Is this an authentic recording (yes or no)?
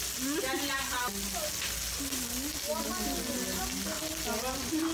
yes